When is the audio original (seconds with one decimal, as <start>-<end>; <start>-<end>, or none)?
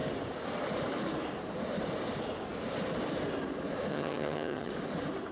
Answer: 0.0-3.9; 4.7-5.3